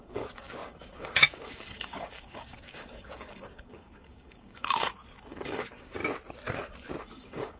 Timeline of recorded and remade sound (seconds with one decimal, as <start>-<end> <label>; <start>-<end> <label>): 0.0-6.0 remade; 6.0-7.0 recorded; 7.0-7.6 remade